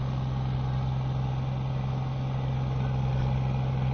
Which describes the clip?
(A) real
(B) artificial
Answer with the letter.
A